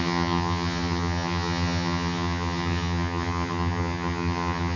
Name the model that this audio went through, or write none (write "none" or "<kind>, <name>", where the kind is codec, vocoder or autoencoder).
vocoder, HiFi-GAN